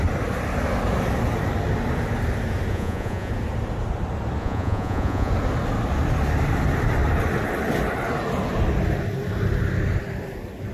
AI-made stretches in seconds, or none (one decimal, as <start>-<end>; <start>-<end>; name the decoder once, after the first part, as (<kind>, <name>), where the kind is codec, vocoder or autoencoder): 2.7-3.3 (vocoder, Vocos); 4.4-5.3